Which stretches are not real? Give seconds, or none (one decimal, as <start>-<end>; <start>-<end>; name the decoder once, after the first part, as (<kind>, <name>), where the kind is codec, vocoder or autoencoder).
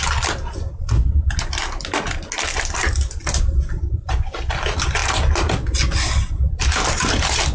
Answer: none